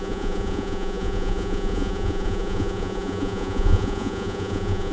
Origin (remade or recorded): remade